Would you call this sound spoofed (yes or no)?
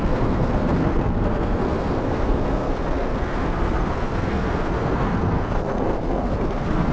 yes